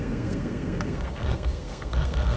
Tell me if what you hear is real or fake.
fake